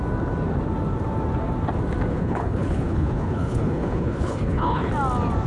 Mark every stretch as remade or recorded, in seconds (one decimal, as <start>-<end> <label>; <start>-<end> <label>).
0.0-2.1 recorded; 2.1-4.9 remade; 4.9-5.5 recorded